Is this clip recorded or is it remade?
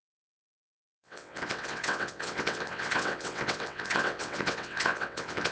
remade